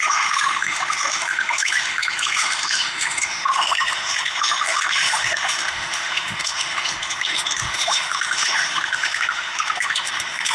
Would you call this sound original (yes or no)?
no